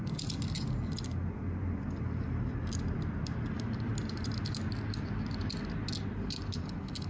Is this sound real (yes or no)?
yes